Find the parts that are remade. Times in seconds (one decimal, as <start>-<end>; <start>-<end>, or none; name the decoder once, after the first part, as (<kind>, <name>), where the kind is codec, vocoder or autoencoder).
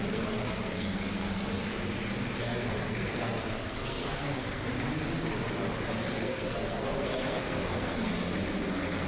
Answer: 0.0-1.7 (codec, SNAC); 2.4-4.7; 6.1-8.1; 8.7-9.1